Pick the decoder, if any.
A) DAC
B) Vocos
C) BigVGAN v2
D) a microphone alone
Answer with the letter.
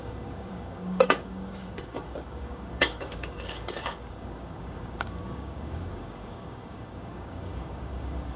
A